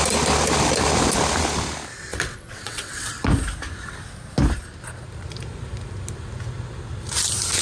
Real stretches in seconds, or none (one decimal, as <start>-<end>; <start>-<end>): 0.0-2.1; 3.1-7.6